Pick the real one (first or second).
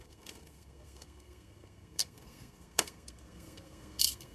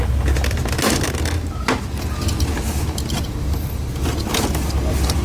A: second